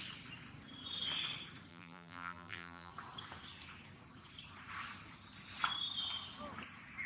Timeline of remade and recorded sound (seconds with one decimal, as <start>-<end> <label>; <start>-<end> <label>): 0.0-1.7 recorded; 1.7-2.9 remade; 2.9-7.1 recorded

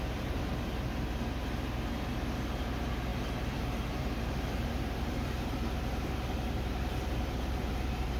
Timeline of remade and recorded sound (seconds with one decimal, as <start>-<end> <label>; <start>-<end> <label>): 0.0-3.1 recorded; 3.1-8.2 remade